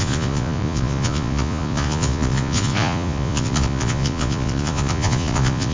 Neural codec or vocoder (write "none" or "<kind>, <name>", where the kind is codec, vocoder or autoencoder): vocoder, Vocos